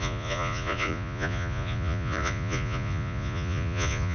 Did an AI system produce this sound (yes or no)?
yes